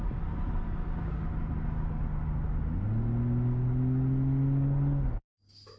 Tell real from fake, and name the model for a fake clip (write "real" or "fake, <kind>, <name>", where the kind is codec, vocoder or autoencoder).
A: real